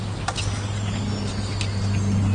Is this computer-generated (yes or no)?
no